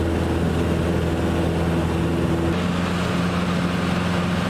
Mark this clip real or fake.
real